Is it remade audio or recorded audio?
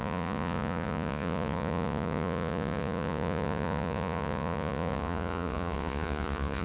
remade